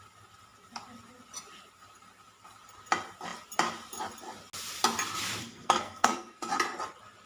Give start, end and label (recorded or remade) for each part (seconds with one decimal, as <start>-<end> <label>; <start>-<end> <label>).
0.0-5.4 recorded; 5.4-6.5 remade; 6.5-7.3 recorded

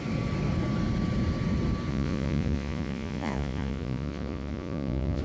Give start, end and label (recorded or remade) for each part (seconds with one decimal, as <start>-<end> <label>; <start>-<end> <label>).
0.0-1.9 recorded; 1.9-5.2 remade

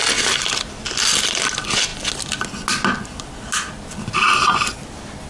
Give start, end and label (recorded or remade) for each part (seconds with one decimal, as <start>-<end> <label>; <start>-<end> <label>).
0.0-5.3 recorded

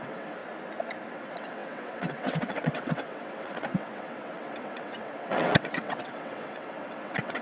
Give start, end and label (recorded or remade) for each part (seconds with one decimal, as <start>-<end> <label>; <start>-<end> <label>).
0.0-0.4 remade; 0.4-1.1 recorded; 1.1-7.4 remade